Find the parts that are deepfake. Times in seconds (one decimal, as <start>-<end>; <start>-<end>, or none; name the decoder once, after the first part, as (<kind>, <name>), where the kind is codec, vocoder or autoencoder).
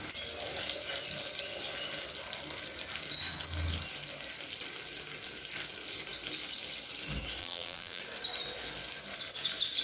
7.4-8.0 (vocoder, BigVGAN v2)